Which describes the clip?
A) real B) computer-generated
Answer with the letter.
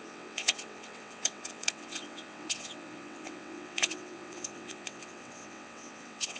B